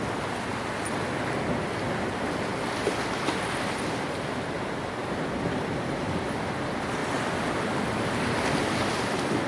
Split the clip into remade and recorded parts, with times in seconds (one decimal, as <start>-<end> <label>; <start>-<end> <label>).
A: 0.0-9.5 recorded